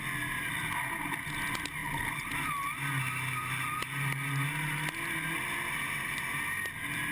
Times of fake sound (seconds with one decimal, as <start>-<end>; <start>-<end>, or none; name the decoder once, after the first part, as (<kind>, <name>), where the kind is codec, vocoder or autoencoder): none